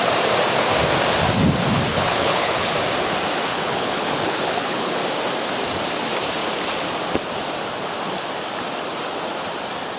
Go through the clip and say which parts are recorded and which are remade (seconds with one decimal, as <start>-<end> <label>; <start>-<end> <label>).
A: 0.0-1.9 recorded; 1.9-2.7 remade; 2.7-3.5 recorded; 3.5-5.0 remade; 5.0-10.0 recorded